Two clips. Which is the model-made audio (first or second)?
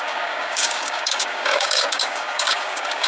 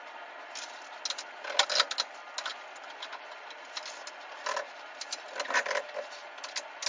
first